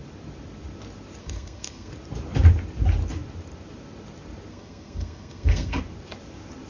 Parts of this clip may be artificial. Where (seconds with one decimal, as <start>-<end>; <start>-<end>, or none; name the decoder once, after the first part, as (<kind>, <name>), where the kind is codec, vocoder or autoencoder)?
1.2-1.9 (codec, SNAC); 4.5-5.8